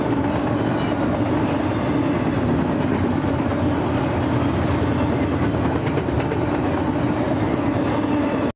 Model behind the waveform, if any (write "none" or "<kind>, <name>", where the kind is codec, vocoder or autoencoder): none